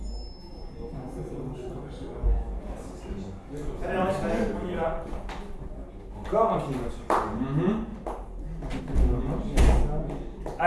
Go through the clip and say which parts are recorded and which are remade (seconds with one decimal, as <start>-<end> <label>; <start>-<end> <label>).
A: 0.0-0.5 recorded; 0.5-1.4 remade; 1.4-3.8 recorded; 3.8-5.6 remade; 5.6-7.9 recorded; 7.9-8.8 remade; 8.8-10.7 recorded